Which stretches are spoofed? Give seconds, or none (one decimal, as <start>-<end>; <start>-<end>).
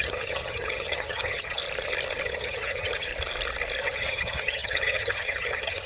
0.0-1.6; 2.2-3.1; 3.8-5.9